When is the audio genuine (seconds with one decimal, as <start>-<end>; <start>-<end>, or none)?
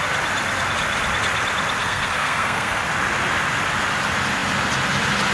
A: 0.0-1.8; 2.8-5.3